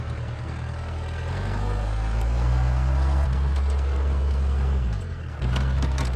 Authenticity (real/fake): fake